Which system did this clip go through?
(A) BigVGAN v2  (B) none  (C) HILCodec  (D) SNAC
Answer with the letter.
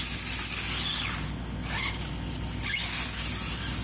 B